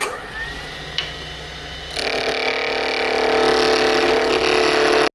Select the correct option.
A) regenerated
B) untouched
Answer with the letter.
B